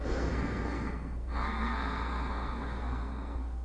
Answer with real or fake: fake